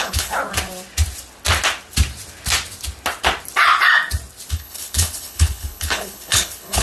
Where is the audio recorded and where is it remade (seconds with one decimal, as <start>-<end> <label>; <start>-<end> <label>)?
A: 0.0-0.4 remade; 0.4-4.5 recorded; 4.5-6.8 remade